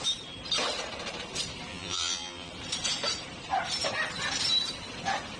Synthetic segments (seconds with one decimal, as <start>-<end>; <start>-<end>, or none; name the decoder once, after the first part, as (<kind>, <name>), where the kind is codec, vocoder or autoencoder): 1.7-2.5 (vocoder, BigVGAN v2)